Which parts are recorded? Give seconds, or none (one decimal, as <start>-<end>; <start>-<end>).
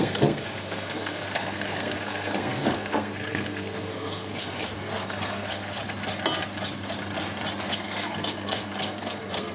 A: 5.8-7.7